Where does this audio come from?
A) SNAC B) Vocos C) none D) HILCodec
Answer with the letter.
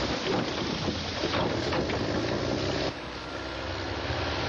C